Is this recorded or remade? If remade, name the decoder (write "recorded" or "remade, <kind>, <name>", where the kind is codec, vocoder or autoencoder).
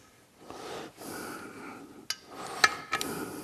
recorded